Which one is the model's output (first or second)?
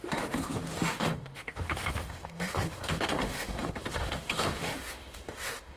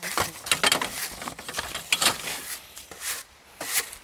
first